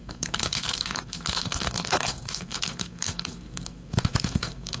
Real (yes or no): no